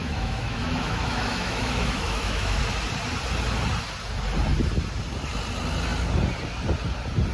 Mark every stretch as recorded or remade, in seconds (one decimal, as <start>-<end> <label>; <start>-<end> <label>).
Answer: 0.0-2.6 remade; 2.6-7.3 recorded